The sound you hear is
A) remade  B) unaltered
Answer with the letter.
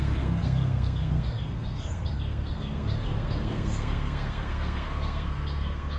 A